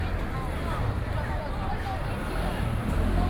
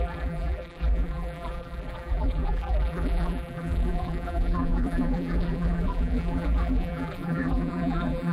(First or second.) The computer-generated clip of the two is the second